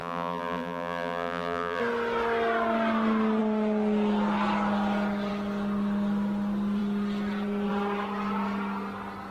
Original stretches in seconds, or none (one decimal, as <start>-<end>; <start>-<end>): 1.8-9.3